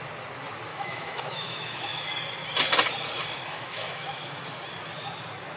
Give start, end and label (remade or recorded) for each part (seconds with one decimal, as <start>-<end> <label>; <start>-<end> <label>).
0.0-0.7 recorded; 0.7-2.1 remade; 2.1-3.5 recorded; 3.5-4.4 remade; 4.4-5.6 recorded